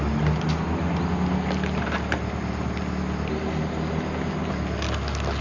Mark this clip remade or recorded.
recorded